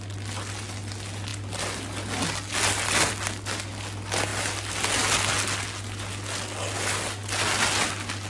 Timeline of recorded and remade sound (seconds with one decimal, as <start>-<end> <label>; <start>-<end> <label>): 0.0-8.3 recorded